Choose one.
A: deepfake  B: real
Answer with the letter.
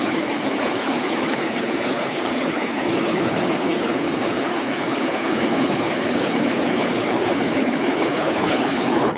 A